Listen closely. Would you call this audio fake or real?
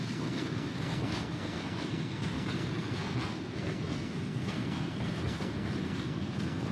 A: fake